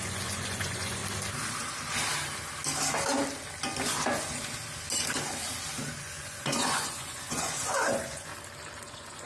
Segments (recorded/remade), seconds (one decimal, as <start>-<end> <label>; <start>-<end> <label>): 0.0-1.0 remade; 1.0-6.0 recorded; 6.0-8.3 remade; 8.3-8.9 recorded; 8.9-9.3 remade

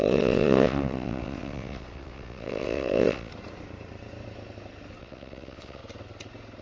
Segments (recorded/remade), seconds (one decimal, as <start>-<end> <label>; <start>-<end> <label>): 0.0-3.3 remade; 3.3-5.0 recorded; 5.0-5.8 remade; 5.8-6.6 recorded